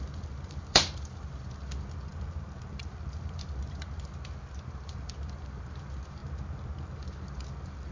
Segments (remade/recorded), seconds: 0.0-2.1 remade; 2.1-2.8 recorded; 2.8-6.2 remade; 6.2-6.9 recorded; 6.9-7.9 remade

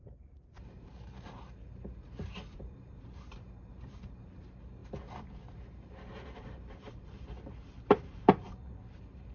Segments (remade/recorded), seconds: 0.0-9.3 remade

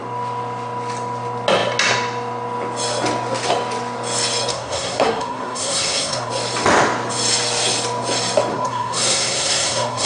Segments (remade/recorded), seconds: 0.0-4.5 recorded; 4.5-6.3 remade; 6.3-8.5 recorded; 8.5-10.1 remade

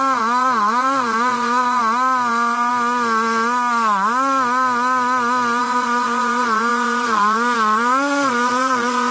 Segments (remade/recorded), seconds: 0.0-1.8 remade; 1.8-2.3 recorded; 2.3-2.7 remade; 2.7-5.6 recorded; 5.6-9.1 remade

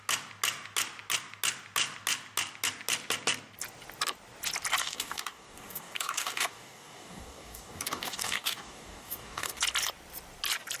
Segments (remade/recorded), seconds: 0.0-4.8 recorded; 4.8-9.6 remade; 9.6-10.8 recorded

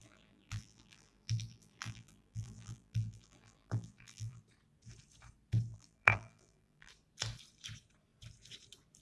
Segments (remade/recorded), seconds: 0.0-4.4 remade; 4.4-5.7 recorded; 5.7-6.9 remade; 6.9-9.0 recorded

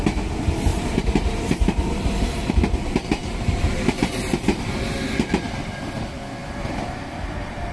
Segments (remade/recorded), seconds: 0.0-0.7 recorded; 0.7-2.5 remade; 2.5-3.2 recorded; 3.2-4.0 remade; 4.0-7.7 recorded